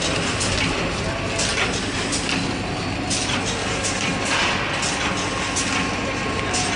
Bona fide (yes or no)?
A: yes